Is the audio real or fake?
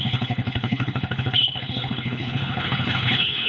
fake